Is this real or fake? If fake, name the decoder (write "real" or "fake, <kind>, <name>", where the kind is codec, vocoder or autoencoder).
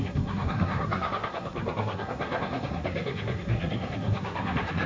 fake, codec, SNAC